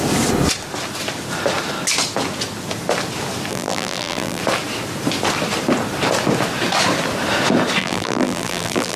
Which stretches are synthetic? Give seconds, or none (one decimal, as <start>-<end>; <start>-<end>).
3.5-4.4; 7.8-9.0